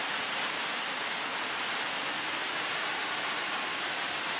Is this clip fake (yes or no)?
no